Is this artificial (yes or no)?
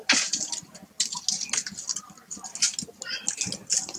no